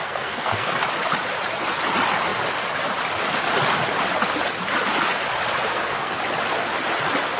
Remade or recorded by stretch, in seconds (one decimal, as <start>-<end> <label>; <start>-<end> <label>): 0.0-0.8 remade; 0.8-5.7 recorded; 5.7-6.2 remade; 6.2-7.4 recorded

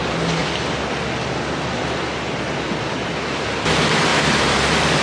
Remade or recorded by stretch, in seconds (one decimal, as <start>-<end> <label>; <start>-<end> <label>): 0.0-0.4 recorded; 0.4-3.4 remade; 3.4-4.1 recorded; 4.1-5.0 remade

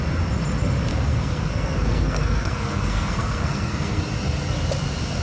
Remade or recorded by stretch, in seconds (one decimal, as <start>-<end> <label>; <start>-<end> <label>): 0.0-0.9 recorded; 0.9-4.0 remade; 4.0-5.2 recorded

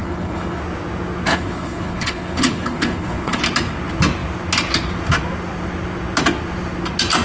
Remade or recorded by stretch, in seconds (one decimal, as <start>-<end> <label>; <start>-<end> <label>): 0.0-0.6 remade; 0.6-1.3 recorded; 1.3-3.4 remade; 3.4-7.2 recorded